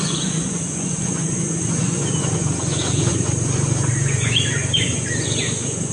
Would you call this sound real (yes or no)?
no